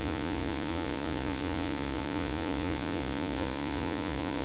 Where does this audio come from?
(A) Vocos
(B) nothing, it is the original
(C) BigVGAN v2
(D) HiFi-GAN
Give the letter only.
A